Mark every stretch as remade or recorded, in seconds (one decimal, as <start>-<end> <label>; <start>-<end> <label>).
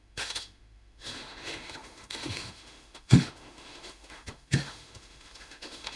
0.0-6.0 remade